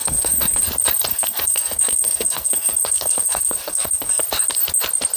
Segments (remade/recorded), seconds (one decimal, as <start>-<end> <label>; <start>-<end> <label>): 0.0-0.6 remade; 0.6-1.1 recorded; 1.1-4.2 remade; 4.2-5.2 recorded